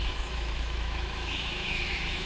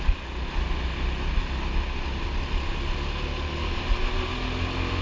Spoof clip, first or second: first